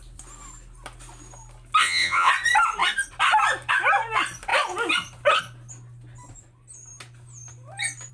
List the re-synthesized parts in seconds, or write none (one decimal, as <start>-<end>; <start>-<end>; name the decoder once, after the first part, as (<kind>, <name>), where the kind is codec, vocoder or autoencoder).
1.8-2.3 (vocoder, WaveNeXt)

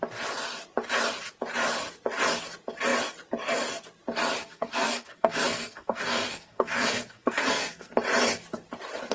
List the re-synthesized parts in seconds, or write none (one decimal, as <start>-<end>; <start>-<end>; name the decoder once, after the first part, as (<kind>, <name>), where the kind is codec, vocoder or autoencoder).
4.4-7.9 (codec, SNAC)

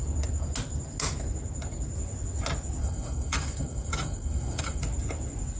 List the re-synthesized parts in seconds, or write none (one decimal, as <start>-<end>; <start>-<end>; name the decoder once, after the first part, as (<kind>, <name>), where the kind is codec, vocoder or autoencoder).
2.8-4.8 (autoencoder, DAC-VAE)

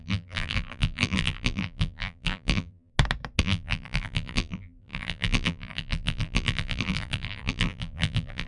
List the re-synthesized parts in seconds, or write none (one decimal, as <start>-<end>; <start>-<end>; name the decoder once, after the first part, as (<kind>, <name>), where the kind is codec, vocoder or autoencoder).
0.0-2.9 (vocoder, BigVGAN v2); 3.4-8.5